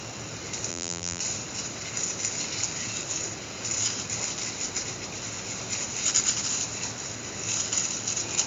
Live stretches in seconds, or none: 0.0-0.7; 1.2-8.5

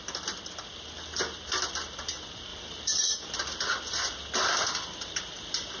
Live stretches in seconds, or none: 0.0-2.5; 3.1-5.8

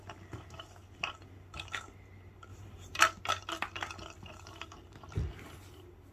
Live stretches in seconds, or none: 0.0-2.5; 3.0-6.1